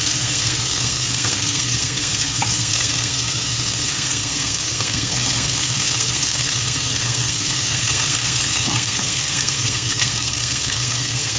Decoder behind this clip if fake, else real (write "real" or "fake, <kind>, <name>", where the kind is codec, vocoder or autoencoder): fake, codec, SNAC